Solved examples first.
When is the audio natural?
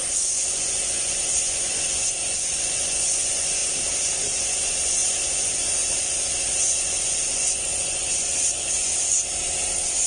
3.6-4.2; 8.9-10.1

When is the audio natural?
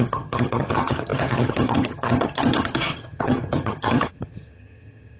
none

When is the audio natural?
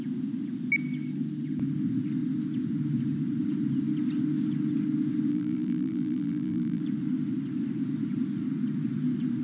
0.0-5.3; 6.8-9.4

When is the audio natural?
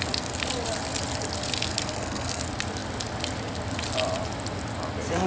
0.0-1.7; 2.4-5.3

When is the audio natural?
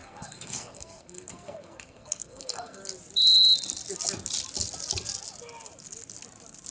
2.8-6.7